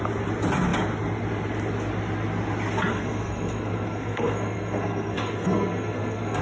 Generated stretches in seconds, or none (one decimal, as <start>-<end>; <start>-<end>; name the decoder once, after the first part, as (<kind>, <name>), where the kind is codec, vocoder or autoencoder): 2.9-6.4 (codec, SNAC)